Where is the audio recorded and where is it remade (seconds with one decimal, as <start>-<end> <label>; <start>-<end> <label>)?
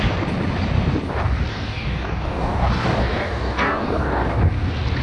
0.0-1.5 recorded; 1.5-4.5 remade; 4.5-5.0 recorded